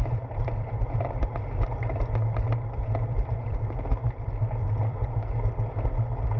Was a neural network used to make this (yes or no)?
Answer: yes